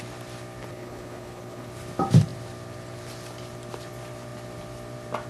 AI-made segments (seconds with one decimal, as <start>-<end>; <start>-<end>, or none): 0.7-1.7